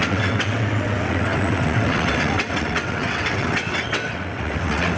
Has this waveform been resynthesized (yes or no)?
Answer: yes